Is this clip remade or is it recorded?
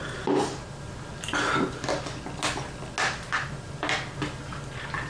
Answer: recorded